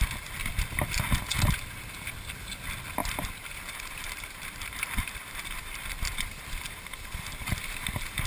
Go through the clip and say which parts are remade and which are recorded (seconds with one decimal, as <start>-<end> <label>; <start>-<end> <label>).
0.0-1.3 recorded; 1.3-2.5 remade; 2.5-3.0 recorded; 3.0-7.5 remade; 7.5-8.3 recorded